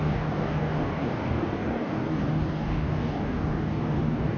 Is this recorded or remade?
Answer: remade